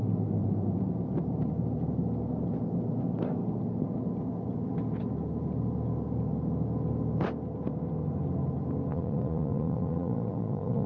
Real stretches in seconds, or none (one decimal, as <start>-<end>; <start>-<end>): 0.0-8.9